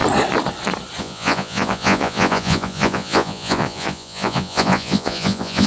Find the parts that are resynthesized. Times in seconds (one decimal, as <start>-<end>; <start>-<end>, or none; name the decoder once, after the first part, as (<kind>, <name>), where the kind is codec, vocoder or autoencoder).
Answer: 1.0-5.7 (vocoder, Vocos)